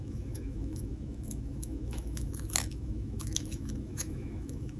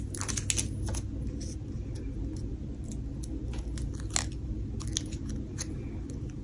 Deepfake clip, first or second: first